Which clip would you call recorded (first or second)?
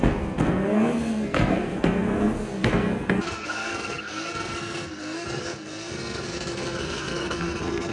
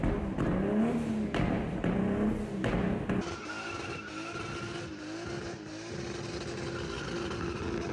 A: second